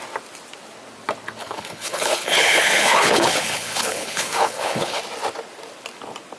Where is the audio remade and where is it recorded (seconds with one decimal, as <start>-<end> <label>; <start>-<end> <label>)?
0.0-1.4 recorded; 1.4-5.0 remade; 5.0-6.4 recorded